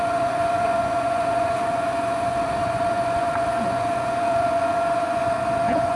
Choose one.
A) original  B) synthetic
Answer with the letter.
B